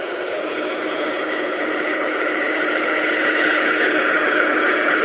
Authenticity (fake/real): fake